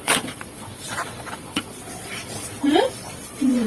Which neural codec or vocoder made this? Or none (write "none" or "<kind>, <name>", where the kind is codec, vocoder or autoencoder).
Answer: vocoder, Vocos